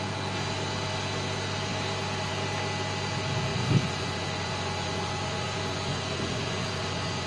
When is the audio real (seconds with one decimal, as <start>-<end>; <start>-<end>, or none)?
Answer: 0.0-3.5